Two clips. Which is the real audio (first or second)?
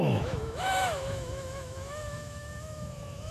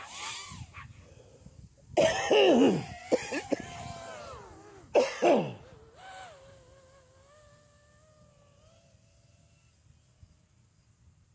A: second